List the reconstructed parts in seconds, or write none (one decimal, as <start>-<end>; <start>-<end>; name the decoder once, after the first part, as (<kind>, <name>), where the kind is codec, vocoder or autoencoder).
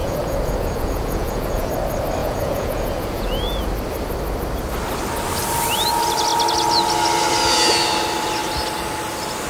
0.0-1.7 (vocoder, Vocos); 2.2-3.6